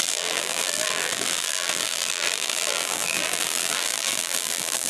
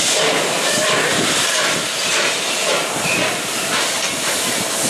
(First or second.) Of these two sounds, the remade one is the first